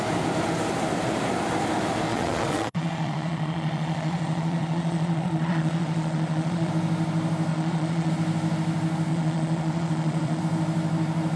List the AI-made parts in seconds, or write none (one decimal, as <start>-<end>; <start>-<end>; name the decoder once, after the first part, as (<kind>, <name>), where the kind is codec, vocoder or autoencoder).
2.1-6.7 (vocoder, Vocos); 7.5-8.1; 9.1-10.4